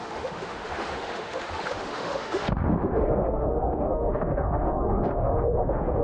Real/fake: fake